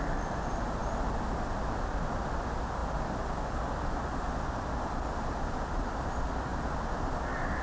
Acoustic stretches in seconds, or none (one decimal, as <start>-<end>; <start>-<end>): 0.0-7.6